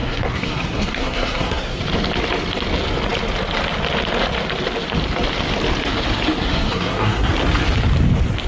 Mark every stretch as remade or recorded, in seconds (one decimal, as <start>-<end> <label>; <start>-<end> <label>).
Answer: 0.0-1.8 remade; 1.8-6.4 recorded; 6.4-7.3 remade; 7.3-8.5 recorded